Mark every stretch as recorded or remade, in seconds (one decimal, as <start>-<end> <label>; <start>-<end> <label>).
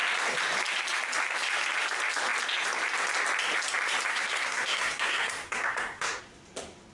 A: 0.0-4.1 recorded; 4.1-6.2 remade; 6.2-6.9 recorded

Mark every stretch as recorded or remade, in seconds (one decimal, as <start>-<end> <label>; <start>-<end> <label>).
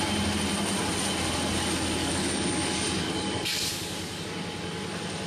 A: 0.0-2.0 recorded; 2.0-4.2 remade; 4.2-5.3 recorded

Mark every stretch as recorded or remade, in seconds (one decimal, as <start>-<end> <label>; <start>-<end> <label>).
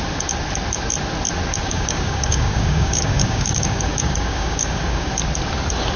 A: 0.0-1.5 recorded; 1.5-5.1 remade; 5.1-6.0 recorded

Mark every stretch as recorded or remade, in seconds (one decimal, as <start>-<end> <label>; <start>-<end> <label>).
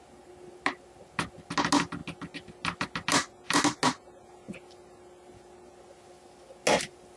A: 0.0-7.2 recorded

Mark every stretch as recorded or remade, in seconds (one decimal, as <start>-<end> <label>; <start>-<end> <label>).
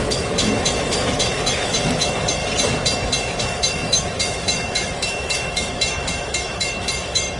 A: 0.0-2.4 remade; 2.4-3.4 recorded; 3.4-7.4 remade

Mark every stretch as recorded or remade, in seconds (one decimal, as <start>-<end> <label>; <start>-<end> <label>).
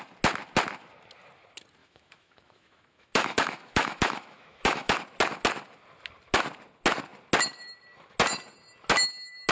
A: 0.0-1.8 recorded; 1.8-5.0 remade; 5.0-9.5 recorded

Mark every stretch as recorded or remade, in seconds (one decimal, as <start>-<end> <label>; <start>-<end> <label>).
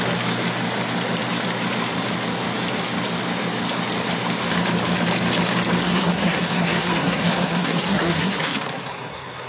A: 0.0-5.8 recorded; 5.8-9.5 remade